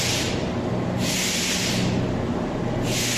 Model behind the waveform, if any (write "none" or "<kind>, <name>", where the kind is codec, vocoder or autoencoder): none